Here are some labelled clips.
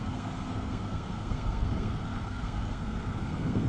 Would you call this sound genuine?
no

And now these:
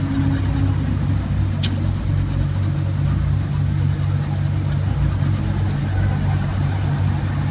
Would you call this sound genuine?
yes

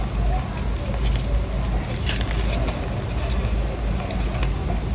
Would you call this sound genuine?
yes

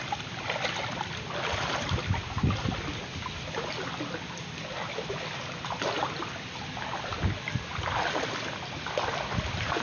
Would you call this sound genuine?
yes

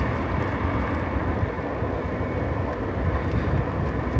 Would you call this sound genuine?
yes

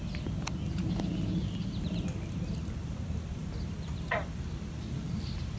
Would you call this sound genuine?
yes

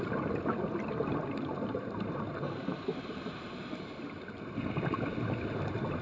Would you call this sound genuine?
yes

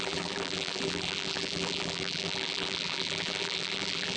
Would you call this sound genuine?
no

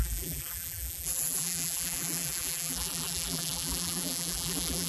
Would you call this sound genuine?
no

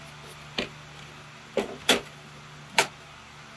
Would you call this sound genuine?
yes